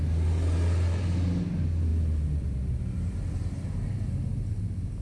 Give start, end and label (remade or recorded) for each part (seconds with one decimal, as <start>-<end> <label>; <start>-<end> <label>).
0.0-5.0 recorded